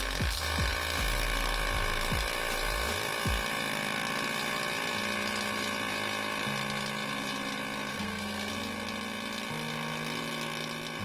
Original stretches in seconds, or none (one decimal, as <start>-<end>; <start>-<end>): 0.0-7.9; 8.5-11.0